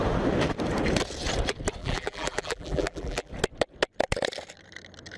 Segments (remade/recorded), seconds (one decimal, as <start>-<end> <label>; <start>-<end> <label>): 0.0-1.8 recorded; 1.8-3.3 remade; 3.3-5.2 recorded